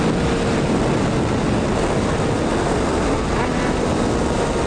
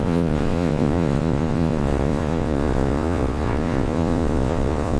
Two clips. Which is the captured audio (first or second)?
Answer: first